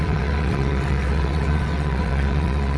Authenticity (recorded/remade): remade